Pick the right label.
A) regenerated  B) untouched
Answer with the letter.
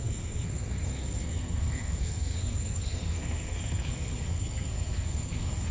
A